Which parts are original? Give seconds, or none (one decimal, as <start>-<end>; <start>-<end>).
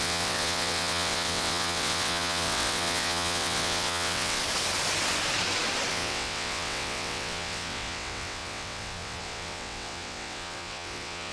4.4-5.9